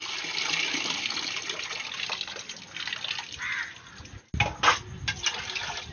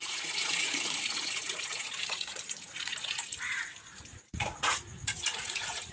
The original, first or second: first